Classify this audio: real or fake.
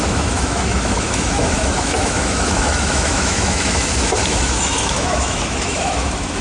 fake